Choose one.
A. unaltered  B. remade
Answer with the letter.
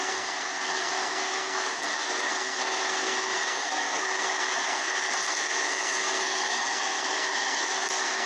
B